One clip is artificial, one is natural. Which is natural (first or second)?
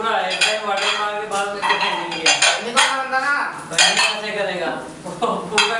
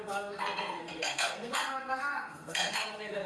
first